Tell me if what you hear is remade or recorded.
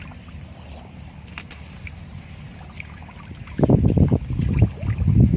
recorded